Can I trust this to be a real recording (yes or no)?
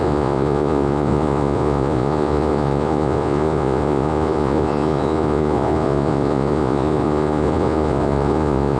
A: no